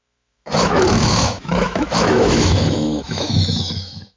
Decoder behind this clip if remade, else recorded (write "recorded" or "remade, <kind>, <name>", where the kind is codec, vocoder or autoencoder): remade, autoencoder, DAC-VAE